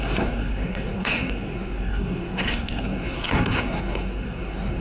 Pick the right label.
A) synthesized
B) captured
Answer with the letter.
A